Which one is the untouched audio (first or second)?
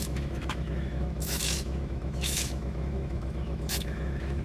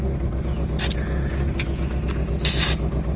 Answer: second